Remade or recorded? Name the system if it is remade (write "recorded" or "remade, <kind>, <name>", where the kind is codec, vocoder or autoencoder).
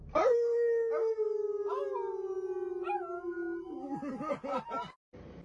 recorded